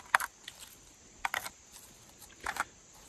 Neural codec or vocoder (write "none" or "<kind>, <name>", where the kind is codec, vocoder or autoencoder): none